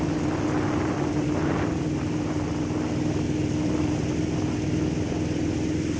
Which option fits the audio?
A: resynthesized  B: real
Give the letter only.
B